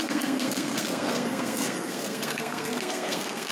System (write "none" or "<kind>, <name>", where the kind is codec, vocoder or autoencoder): codec, SNAC